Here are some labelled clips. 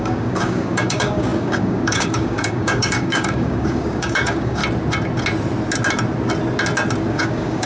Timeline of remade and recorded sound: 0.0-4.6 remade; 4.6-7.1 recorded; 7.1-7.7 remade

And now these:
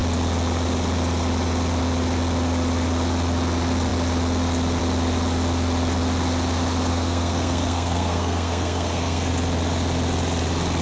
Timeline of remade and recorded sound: 0.0-6.9 recorded; 6.9-9.3 remade; 9.3-10.8 recorded

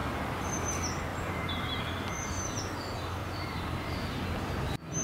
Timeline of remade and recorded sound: 0.0-0.7 remade; 0.7-1.1 recorded; 1.1-1.8 remade; 1.8-3.2 recorded; 3.2-4.1 remade; 4.1-5.0 recorded

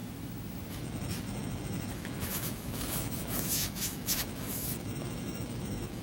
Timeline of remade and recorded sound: 0.0-0.7 recorded; 0.7-6.0 remade

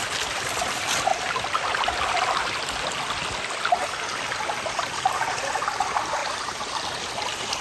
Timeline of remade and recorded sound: 0.0-6.2 recorded; 6.2-6.7 remade; 6.7-7.6 recorded